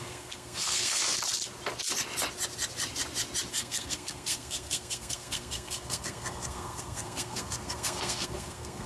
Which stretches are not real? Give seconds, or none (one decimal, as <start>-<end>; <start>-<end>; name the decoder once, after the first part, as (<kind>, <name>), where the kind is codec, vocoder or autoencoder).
0.0-1.0 (codec, SNAC); 3.5-8.9